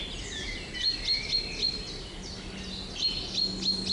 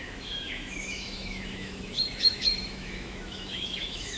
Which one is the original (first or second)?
first